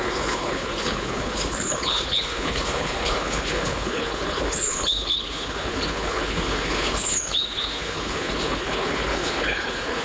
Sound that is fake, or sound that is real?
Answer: fake